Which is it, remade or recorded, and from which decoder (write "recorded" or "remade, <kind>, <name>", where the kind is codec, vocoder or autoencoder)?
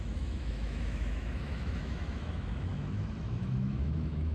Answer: remade, autoencoder, DAC-VAE